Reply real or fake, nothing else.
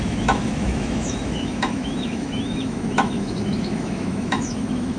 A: fake